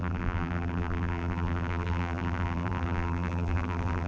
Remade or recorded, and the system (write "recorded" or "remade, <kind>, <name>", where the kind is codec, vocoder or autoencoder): remade, vocoder, BigVGAN v2